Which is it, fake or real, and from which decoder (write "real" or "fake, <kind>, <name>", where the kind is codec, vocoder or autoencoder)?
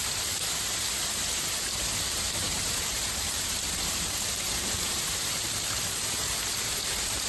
fake, vocoder, BigVGAN v2